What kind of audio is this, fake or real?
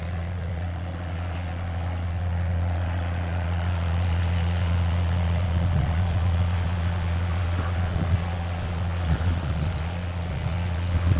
fake